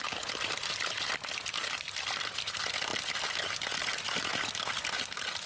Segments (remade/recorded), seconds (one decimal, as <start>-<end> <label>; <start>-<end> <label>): 0.0-5.5 recorded